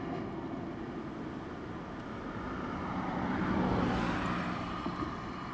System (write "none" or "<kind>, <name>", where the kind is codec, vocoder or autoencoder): none